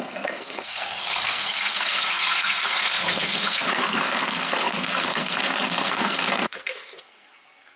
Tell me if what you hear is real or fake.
fake